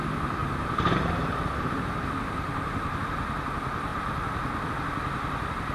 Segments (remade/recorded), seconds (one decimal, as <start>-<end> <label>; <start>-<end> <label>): 0.0-0.4 recorded; 0.4-3.0 remade; 3.0-3.9 recorded; 3.9-4.7 remade; 4.7-5.7 recorded